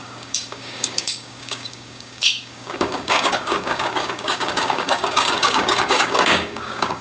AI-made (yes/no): yes